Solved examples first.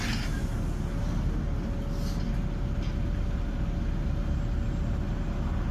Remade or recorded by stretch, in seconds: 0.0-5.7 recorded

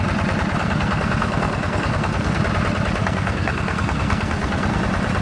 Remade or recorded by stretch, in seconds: 0.0-0.6 recorded; 0.6-2.4 remade; 2.4-3.0 recorded; 3.0-4.8 remade; 4.8-5.2 recorded

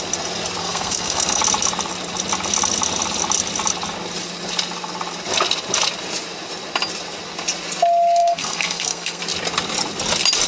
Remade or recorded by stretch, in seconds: 0.0-0.6 recorded; 0.6-1.4 remade; 1.4-8.2 recorded; 8.2-9.2 remade; 9.2-10.5 recorded

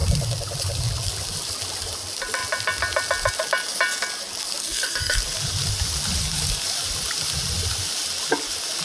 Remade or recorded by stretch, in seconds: 0.0-4.6 recorded; 4.6-5.2 remade; 5.2-8.8 recorded

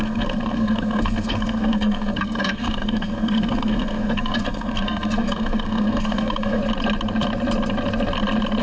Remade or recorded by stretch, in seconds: 0.0-6.6 remade; 6.6-8.6 recorded

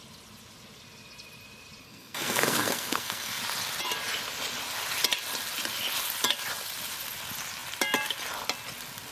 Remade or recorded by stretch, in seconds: 0.0-1.8 recorded; 1.8-3.4 remade; 3.4-9.1 recorded